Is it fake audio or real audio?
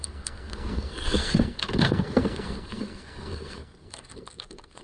fake